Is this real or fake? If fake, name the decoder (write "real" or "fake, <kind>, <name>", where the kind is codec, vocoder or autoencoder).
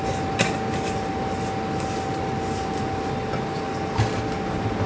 real